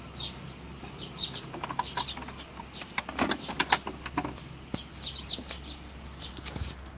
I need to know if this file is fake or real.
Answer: real